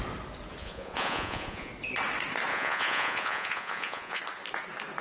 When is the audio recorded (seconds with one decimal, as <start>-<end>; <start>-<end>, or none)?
0.0-0.6; 1.7-2.5; 4.2-5.0